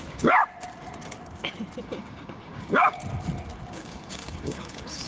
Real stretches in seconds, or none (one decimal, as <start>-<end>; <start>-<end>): 0.4-1.8; 3.0-3.7